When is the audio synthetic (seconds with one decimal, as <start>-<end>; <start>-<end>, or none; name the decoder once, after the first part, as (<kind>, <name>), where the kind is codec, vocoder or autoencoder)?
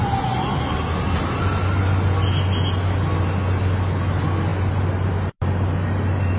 none